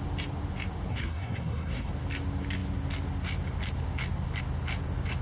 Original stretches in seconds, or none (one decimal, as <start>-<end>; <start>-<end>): 0.0-0.9; 1.9-5.2